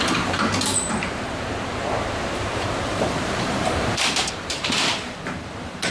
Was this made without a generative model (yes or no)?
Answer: no